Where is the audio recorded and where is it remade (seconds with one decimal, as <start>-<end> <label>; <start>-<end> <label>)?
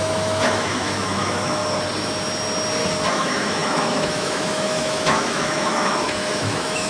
0.0-1.6 remade; 1.6-3.1 recorded; 3.1-6.9 remade